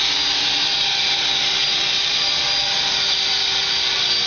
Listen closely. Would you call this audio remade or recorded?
recorded